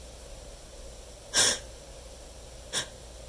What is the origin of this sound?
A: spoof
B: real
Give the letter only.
B